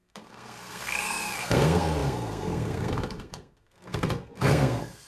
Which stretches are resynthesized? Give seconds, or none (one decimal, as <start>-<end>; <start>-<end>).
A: 0.0-5.1